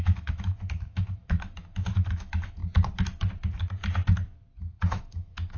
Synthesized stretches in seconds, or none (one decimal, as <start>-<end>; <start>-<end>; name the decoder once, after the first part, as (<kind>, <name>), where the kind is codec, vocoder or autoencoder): 0.0-2.6 (autoencoder, DAC-VAE); 4.7-5.6